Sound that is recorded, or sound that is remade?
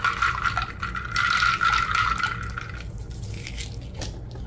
recorded